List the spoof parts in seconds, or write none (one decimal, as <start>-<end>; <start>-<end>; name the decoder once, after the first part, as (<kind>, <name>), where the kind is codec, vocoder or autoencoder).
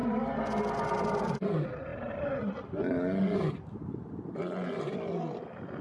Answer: 0.0-0.6 (vocoder, BigVGAN v2)